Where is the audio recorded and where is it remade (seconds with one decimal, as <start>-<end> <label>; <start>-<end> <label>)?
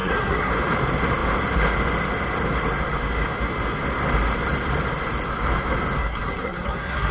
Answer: 0.0-0.5 remade; 0.5-6.0 recorded; 6.0-7.1 remade